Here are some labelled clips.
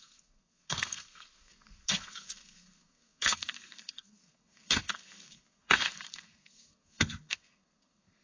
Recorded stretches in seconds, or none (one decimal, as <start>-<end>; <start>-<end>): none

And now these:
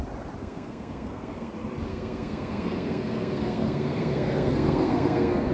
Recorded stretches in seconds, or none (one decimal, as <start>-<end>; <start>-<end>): 0.0-0.4; 1.5-1.9

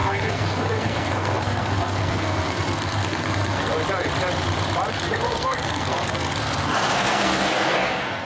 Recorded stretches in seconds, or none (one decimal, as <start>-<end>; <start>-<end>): 3.7-4.9